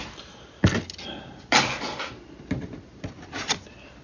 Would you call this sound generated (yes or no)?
no